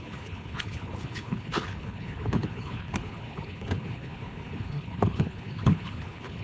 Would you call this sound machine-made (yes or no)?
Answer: yes